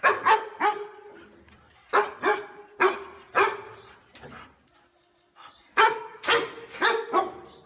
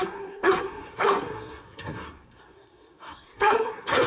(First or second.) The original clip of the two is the first